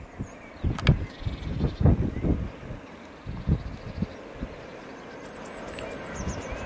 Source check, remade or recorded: recorded